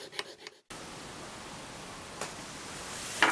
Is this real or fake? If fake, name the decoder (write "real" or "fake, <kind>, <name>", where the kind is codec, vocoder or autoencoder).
real